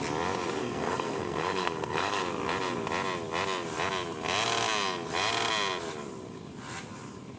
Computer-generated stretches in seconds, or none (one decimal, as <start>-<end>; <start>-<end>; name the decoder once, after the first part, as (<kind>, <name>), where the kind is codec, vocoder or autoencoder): 0.6-2.2 (codec, SNAC)